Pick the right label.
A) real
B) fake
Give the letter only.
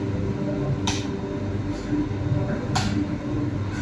A